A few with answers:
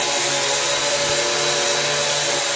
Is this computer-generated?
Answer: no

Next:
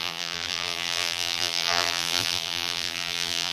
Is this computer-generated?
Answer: yes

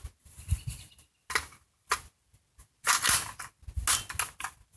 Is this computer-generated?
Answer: no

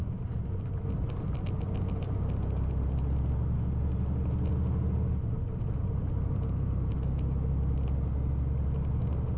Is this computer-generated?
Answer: no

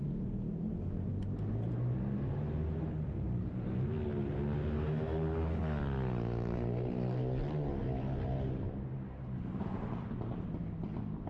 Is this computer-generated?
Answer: no